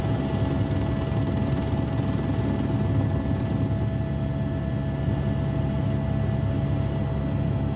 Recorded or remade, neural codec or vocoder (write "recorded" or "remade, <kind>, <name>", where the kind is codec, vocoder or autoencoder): recorded